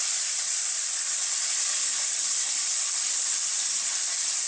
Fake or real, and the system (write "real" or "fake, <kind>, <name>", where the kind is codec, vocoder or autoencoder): fake, vocoder, Vocos